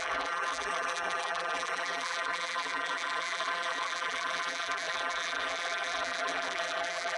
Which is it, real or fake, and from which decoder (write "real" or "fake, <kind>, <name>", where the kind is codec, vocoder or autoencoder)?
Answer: fake, vocoder, BigVGAN v2